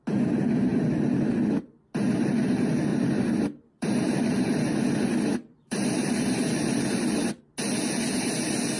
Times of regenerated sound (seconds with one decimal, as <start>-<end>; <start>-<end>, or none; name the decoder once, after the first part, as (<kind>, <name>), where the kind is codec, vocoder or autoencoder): 0.7-1.3 (vocoder, BigVGAN v2); 2.9-7.4